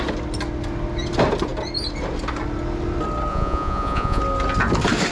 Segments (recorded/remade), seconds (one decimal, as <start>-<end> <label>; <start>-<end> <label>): 0.0-3.3 recorded; 3.3-4.2 remade; 4.2-5.1 recorded